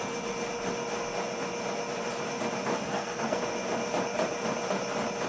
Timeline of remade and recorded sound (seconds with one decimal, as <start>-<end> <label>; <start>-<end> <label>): 0.0-2.7 recorded; 2.7-3.4 remade; 3.4-5.3 recorded